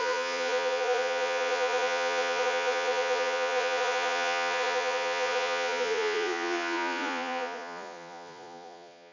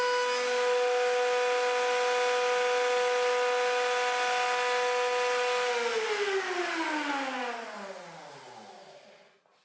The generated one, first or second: first